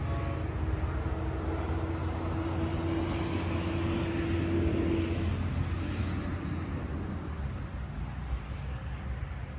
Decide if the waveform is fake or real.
real